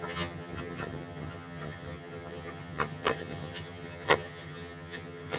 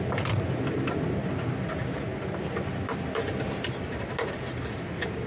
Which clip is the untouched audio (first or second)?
second